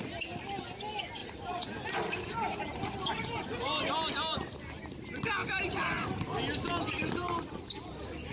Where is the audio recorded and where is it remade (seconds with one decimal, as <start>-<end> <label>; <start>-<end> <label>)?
0.0-1.2 recorded; 1.2-3.9 remade; 3.9-5.4 recorded; 5.4-6.1 remade; 6.1-8.3 recorded